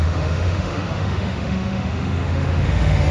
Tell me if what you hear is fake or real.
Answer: fake